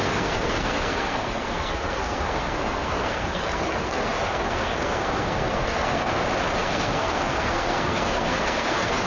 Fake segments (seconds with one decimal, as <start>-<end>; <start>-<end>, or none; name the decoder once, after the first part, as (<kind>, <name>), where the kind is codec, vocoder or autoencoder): 0.0-6.1 (codec, SNAC); 6.6-9.1